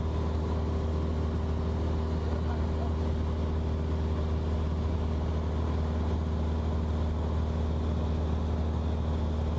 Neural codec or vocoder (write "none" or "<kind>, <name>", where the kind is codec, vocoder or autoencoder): none